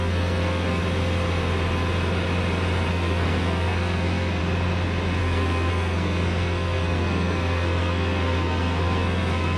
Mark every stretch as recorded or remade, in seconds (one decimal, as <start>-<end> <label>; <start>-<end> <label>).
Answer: 0.0-0.8 remade; 0.8-2.9 recorded; 2.9-4.4 remade; 4.4-5.2 recorded; 5.2-9.6 remade

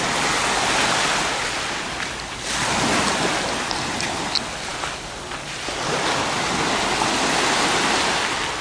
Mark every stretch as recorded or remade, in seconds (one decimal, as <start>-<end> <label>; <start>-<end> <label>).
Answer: 0.0-8.6 recorded